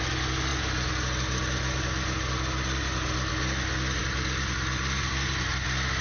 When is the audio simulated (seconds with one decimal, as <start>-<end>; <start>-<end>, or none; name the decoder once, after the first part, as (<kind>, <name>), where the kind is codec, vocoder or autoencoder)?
none